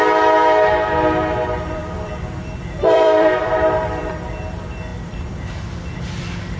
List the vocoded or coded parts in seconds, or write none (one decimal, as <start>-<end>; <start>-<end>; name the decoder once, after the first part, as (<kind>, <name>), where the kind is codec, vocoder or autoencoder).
1.8-4.1 (vocoder, BigVGAN v2); 4.9-5.4